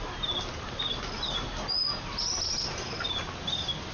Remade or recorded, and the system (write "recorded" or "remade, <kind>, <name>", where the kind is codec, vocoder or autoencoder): recorded